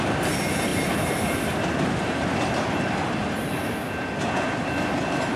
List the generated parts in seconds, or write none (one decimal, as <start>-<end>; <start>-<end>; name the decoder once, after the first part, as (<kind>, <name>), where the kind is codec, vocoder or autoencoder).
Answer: none